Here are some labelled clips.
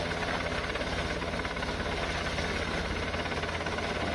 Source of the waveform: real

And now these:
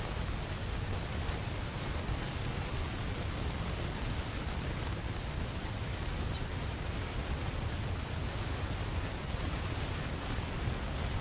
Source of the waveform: real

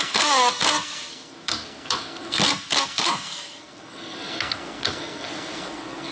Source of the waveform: fake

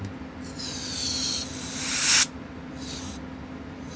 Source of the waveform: real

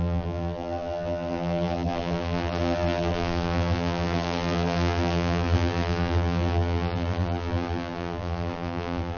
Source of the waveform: fake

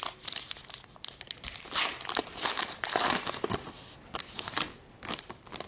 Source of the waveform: real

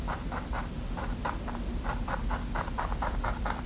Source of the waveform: real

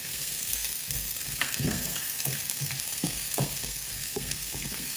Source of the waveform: fake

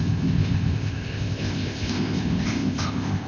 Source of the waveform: fake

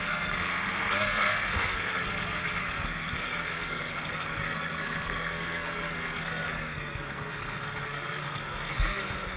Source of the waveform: fake